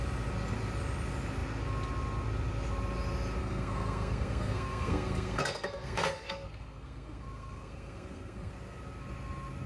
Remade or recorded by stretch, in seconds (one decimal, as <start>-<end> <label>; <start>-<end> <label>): 0.0-3.4 recorded; 3.4-8.5 remade; 8.5-9.7 recorded